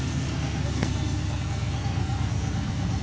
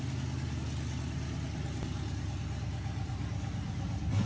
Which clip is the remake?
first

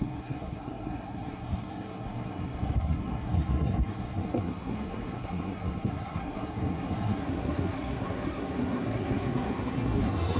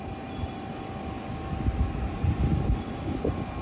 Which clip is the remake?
first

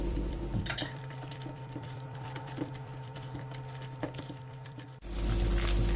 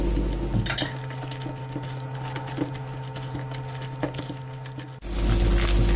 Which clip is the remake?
first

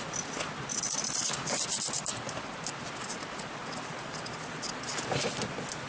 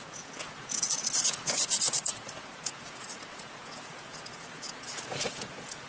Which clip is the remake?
second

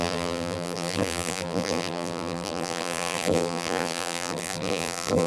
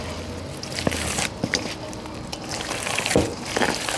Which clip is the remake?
first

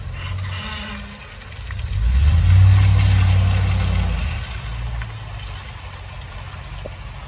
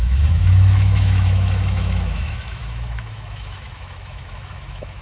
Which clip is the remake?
second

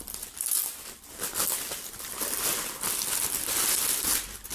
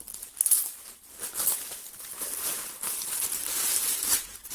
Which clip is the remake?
second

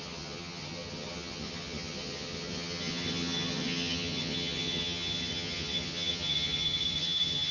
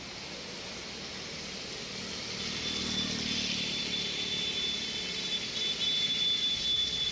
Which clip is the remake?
first